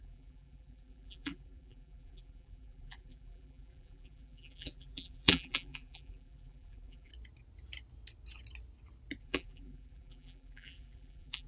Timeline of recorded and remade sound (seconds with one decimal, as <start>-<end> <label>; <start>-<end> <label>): 0.0-7.1 remade; 7.1-9.2 recorded; 9.2-11.5 remade